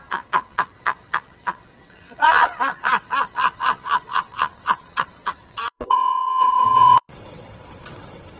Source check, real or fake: fake